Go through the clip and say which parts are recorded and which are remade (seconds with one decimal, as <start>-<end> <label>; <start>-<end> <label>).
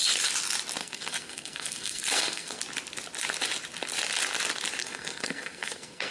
0.0-0.8 recorded; 0.8-2.6 remade; 2.6-4.8 recorded; 4.8-6.1 remade